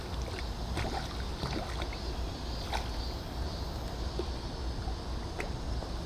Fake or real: real